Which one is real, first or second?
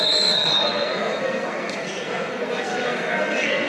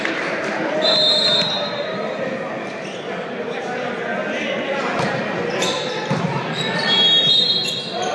second